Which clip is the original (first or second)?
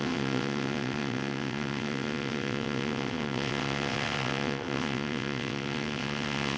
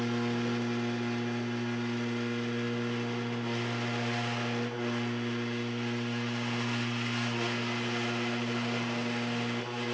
second